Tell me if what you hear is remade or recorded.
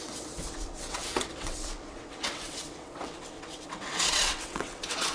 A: remade